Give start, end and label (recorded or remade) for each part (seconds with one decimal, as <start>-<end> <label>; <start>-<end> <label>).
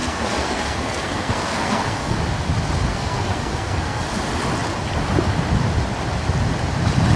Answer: 0.0-2.2 remade; 2.2-2.9 recorded; 2.9-4.0 remade; 4.0-7.2 recorded